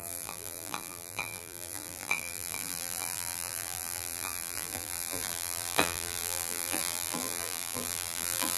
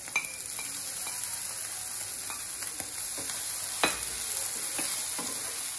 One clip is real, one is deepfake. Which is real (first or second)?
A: second